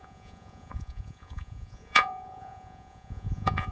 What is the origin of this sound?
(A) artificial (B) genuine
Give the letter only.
A